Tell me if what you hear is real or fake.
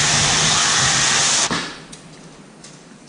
real